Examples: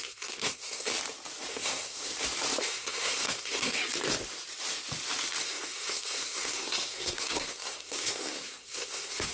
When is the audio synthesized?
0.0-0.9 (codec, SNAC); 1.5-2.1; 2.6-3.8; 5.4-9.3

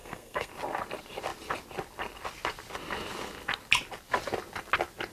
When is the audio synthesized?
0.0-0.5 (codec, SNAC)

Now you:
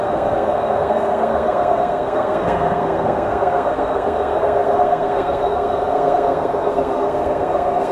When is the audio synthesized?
0.0-7.9 (codec, SNAC)